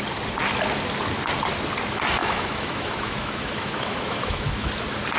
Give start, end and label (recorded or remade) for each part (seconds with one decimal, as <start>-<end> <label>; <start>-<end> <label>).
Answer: 0.0-2.2 recorded; 2.2-4.7 remade; 4.7-5.2 recorded